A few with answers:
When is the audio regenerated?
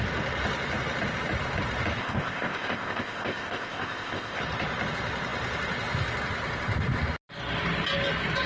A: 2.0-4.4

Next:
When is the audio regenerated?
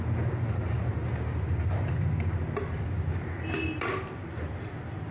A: none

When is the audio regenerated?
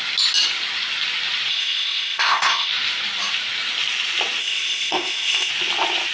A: 1.5-2.7; 4.4-5.5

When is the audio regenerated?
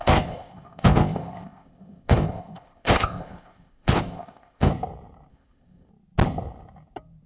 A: 0.0-4.7; 5.3-5.9